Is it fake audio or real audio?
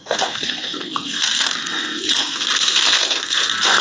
fake